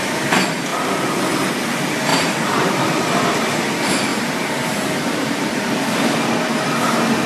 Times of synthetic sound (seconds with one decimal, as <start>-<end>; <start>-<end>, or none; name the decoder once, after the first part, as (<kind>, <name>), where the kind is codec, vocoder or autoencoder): 2.1-3.2 (vocoder, BigVGAN v2); 4.1-6.4